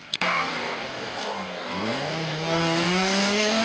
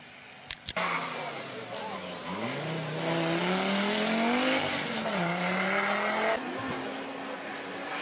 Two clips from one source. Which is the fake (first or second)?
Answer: first